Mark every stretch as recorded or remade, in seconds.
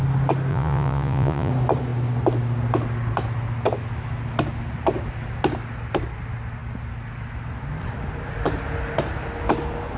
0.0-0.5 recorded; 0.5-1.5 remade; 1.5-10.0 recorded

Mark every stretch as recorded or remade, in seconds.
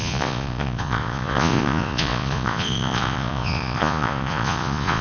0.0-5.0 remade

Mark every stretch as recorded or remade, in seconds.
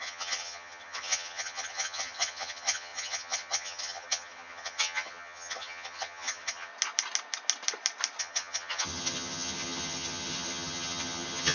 0.0-6.7 remade; 6.7-8.2 recorded; 8.2-11.5 remade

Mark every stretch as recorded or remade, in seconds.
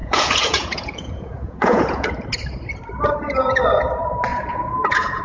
0.0-2.1 remade; 2.1-4.3 recorded; 4.3-5.2 remade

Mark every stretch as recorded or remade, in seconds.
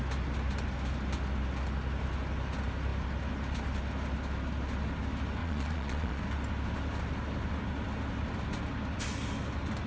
0.0-5.4 recorded; 5.4-6.2 remade; 6.2-9.9 recorded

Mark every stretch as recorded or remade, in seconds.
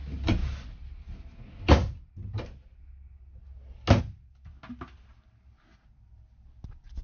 0.0-7.0 recorded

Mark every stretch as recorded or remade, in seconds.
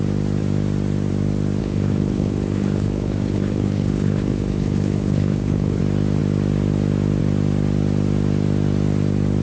0.0-1.6 recorded; 1.6-5.8 remade; 5.8-9.4 recorded